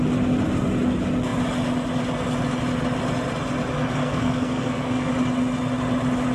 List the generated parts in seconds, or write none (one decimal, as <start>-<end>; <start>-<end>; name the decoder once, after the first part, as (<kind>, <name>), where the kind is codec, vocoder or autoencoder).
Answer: 4.0-5.1 (codec, SNAC)

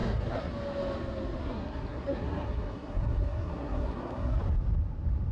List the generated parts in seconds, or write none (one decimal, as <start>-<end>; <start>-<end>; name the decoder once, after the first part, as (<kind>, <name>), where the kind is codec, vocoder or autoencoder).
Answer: 0.0-0.5 (codec, SNAC); 1.4-4.4

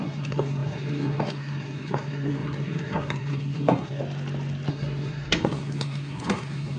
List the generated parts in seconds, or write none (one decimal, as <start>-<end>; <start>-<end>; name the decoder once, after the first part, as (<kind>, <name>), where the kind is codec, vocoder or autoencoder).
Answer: 0.0-4.0 (codec, SNAC); 4.7-6.8

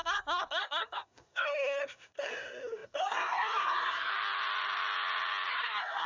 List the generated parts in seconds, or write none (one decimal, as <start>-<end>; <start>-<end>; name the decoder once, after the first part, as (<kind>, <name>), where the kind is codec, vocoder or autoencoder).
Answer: 0.0-4.1 (codec, SNAC); 5.5-6.1

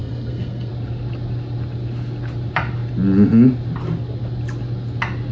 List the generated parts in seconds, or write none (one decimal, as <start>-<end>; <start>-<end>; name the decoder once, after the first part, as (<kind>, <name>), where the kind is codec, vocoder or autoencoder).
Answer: 0.0-0.7 (codec, SNAC)

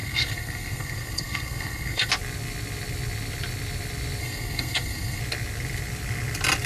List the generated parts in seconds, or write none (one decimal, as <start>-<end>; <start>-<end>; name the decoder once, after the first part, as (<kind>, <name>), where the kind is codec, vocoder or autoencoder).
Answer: 0.0-2.1 (codec, SNAC); 4.2-5.2

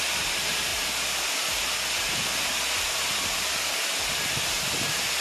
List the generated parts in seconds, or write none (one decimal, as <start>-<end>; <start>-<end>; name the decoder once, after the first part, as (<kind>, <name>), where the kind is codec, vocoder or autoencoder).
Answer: none

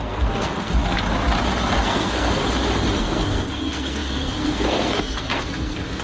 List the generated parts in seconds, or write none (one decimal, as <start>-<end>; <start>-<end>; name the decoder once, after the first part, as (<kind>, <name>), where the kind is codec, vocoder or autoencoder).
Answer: 0.0-0.8 (codec, SNAC); 1.8-2.4; 3.0-6.0